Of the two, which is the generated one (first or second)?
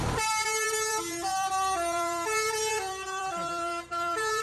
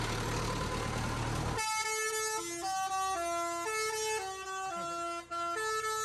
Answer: first